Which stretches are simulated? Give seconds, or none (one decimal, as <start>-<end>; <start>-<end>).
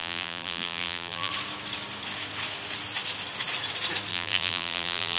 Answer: 0.0-1.3; 4.1-5.2